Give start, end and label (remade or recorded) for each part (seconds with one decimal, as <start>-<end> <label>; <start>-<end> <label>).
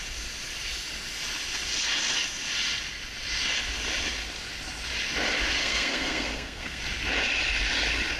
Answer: 0.0-5.6 recorded; 5.6-6.8 remade; 6.8-8.2 recorded